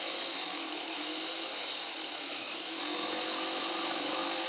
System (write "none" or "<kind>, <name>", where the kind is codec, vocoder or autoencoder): autoencoder, DAC-VAE